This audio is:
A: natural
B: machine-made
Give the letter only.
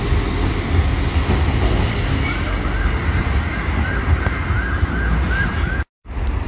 A